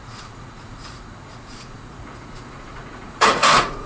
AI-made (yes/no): yes